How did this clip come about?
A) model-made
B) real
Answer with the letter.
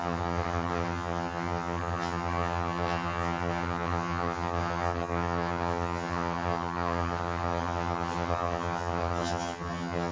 A